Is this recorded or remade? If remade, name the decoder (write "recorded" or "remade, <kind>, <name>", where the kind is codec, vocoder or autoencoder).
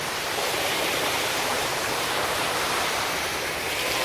remade, vocoder, BigVGAN v2